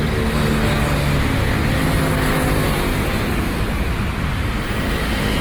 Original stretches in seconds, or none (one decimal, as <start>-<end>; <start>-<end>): 0.0-2.9; 4.9-5.4